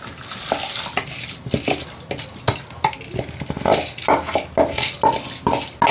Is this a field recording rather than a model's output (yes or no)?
yes